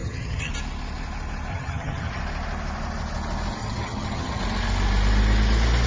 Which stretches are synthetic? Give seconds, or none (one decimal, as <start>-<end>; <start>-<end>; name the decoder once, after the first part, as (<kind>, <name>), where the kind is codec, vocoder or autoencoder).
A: 0.0-0.5 (vocoder, HiFi-GAN); 1.5-2.2; 3.6-4.4